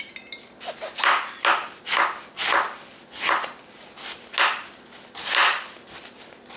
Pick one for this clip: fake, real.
real